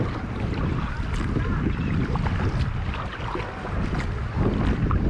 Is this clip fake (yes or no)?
no